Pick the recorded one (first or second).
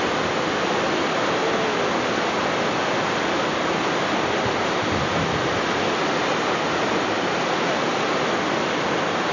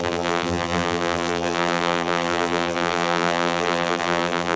first